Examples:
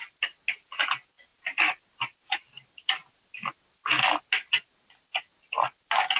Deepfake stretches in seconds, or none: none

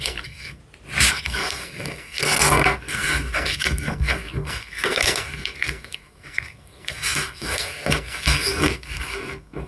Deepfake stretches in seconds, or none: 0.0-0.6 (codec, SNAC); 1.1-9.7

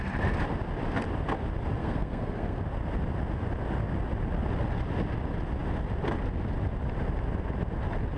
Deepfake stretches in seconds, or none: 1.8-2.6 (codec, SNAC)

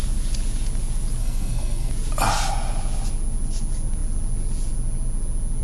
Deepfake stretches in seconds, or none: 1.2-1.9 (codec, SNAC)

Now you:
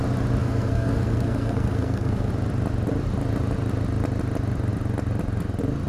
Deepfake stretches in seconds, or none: 0.4-2.3 (codec, SNAC)